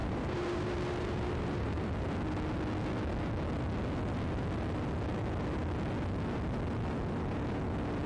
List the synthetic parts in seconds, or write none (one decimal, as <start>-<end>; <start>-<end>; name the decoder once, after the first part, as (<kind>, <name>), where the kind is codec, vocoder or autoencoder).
0.0-2.1 (vocoder, BigVGAN v2)